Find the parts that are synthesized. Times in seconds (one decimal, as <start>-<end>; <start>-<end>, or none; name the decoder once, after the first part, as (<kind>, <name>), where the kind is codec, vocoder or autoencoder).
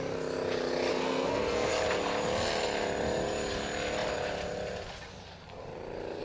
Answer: 0.9-1.7 (codec, SNAC)